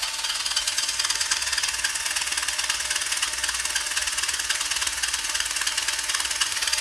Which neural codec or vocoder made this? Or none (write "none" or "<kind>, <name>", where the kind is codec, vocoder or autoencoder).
vocoder, Vocos